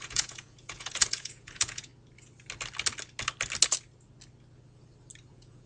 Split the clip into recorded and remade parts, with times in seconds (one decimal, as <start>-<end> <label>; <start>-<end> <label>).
0.0-1.9 remade; 1.9-5.3 recorded; 5.3-5.7 remade